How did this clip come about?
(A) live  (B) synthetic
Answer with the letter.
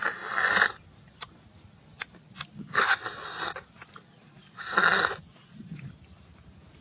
A